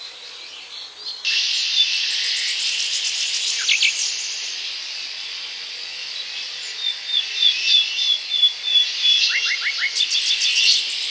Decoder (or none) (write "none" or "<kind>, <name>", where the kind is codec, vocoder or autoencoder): none